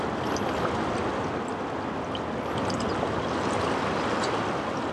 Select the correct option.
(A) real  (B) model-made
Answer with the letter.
A